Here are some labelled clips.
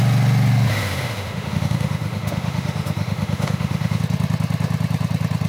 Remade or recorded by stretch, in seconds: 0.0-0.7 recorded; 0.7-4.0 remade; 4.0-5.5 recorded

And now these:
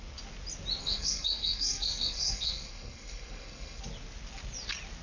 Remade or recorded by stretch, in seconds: 0.0-0.8 recorded; 0.8-3.8 remade; 3.8-5.0 recorded

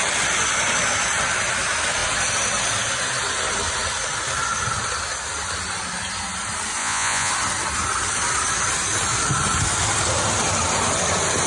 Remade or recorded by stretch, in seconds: 0.0-6.8 recorded; 6.8-7.3 remade; 7.3-11.5 recorded

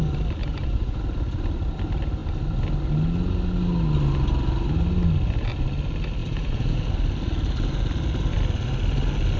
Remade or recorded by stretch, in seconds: 0.0-0.4 recorded; 0.4-1.0 remade; 1.0-6.2 recorded; 6.2-6.9 remade; 6.9-9.4 recorded

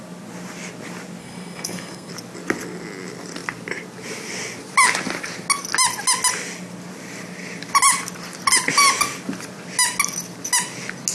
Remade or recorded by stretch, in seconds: 0.0-1.2 recorded; 1.2-2.1 remade; 2.1-11.1 recorded

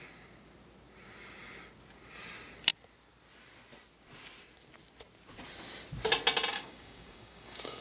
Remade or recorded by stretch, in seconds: 0.0-6.5 recorded; 6.5-7.8 remade